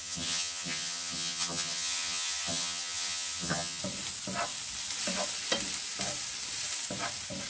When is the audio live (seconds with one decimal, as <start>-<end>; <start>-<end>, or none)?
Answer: 3.8-7.5